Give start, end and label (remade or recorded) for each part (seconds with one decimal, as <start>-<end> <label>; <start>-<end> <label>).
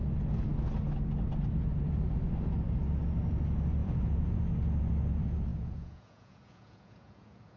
0.0-3.8 recorded; 3.8-4.4 remade; 4.4-5.5 recorded; 5.5-7.6 remade